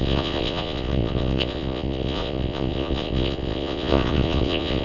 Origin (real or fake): fake